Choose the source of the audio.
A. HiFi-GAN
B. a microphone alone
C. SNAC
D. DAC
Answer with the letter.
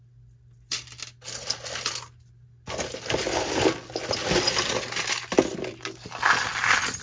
B